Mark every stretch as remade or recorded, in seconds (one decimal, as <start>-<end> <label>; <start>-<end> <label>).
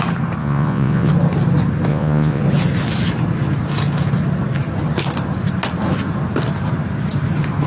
0.0-0.4 recorded; 0.4-1.1 remade; 1.1-1.9 recorded; 1.9-2.4 remade; 2.4-7.7 recorded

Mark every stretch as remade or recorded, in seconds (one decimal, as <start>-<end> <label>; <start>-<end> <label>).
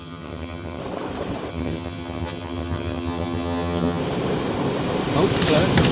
0.0-0.8 remade; 0.8-1.5 recorded; 1.5-4.0 remade; 4.0-5.9 recorded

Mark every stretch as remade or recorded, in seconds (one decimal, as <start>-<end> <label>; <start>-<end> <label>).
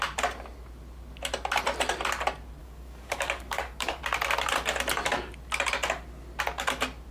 0.0-2.6 recorded; 2.6-4.0 remade; 4.0-7.1 recorded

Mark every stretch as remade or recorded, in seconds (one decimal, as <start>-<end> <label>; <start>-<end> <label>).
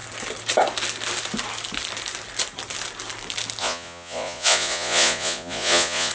0.0-3.6 recorded; 3.6-6.1 remade